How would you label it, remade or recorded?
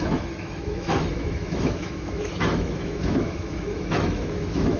remade